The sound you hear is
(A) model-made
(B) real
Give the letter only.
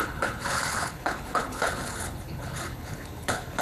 A